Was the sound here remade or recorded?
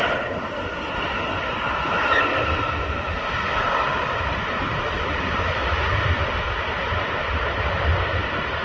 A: recorded